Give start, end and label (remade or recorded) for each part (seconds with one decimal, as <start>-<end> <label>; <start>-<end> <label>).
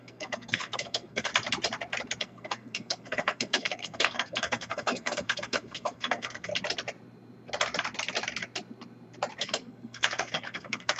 0.0-1.3 remade; 1.3-2.2 recorded; 2.2-6.5 remade; 6.5-9.4 recorded; 9.4-11.0 remade